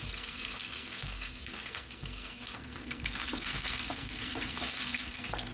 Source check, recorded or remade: remade